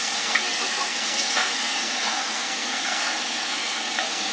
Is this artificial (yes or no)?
yes